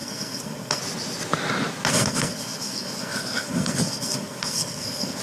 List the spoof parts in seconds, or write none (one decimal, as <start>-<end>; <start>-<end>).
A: 0.0-0.8; 1.9-5.2